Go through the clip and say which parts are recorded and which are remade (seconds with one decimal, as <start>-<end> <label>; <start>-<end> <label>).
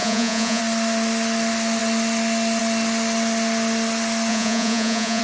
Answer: 0.0-0.6 remade; 0.6-4.3 recorded; 4.3-5.2 remade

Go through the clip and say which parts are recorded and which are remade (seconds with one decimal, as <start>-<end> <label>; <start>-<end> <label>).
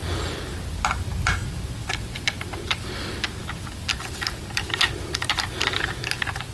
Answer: 0.0-6.5 recorded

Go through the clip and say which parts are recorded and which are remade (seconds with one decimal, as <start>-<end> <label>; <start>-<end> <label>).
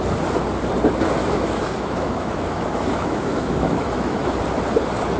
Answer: 0.0-1.2 recorded; 1.2-4.3 remade; 4.3-5.2 recorded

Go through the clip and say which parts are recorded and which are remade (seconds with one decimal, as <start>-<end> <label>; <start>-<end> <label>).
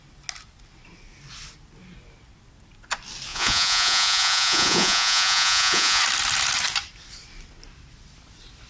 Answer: 0.0-3.3 recorded; 3.3-6.0 remade; 6.0-8.7 recorded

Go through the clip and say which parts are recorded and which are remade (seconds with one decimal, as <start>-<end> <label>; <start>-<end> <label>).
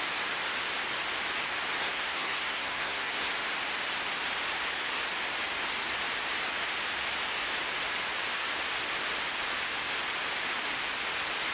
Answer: 0.0-1.8 recorded; 1.8-3.3 remade; 3.3-11.5 recorded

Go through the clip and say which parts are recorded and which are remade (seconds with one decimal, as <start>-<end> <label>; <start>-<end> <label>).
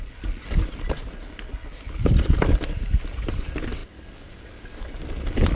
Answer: 0.0-5.6 recorded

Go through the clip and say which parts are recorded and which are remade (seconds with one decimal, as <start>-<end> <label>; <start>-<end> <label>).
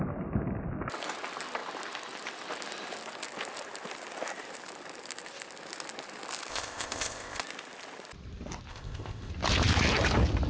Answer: 0.0-6.5 recorded; 6.5-7.4 remade; 7.4-8.7 recorded; 8.7-9.3 remade; 9.3-10.5 recorded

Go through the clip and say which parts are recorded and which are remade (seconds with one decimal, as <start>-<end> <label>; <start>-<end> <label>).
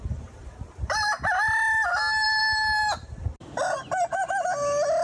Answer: 0.0-5.0 recorded